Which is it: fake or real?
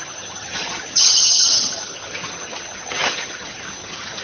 fake